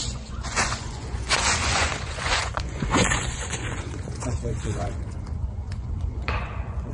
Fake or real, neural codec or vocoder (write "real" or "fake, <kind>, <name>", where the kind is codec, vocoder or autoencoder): fake, vocoder, Vocos